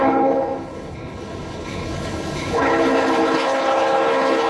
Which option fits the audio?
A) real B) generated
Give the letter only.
B